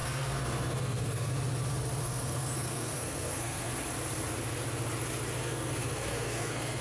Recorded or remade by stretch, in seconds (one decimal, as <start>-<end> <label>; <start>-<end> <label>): 0.0-1.3 remade; 1.3-2.0 recorded; 2.0-3.7 remade; 3.7-5.4 recorded; 5.4-6.8 remade